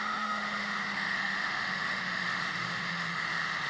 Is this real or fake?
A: fake